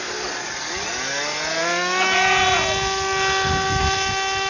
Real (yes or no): yes